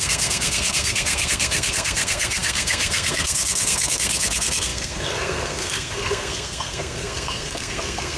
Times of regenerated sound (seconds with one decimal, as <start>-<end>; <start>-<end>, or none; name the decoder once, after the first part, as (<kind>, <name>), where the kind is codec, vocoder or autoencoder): 0.0-8.2 (codec, SNAC)